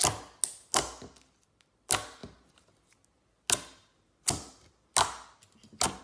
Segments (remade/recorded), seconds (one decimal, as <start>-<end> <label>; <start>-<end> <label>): 0.0-6.0 recorded